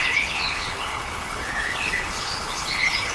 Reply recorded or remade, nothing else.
remade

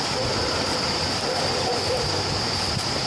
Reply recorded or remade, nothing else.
recorded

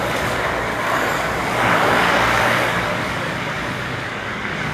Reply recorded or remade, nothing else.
remade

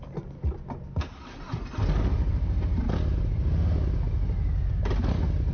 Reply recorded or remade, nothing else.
recorded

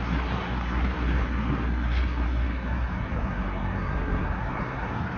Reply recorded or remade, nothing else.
remade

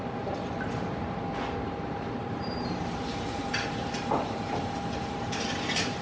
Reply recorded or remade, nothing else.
remade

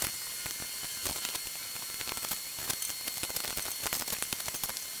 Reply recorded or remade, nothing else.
recorded